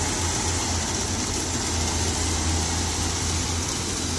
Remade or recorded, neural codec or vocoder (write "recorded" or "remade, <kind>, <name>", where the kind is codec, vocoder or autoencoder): recorded